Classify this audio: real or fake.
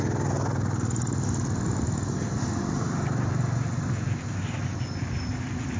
real